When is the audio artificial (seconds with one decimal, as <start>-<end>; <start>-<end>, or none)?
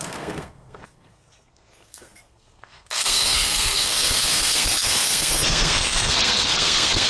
0.0-7.1